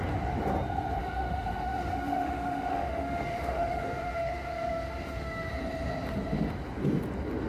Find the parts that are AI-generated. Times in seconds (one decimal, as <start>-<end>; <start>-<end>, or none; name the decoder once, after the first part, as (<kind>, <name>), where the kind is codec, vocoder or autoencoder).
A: 1.0-5.5 (autoencoder, DAC-VAE)